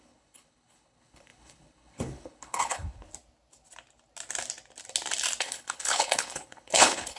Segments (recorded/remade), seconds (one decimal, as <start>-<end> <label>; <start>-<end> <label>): 0.0-3.1 remade; 3.1-5.4 recorded; 5.4-7.2 remade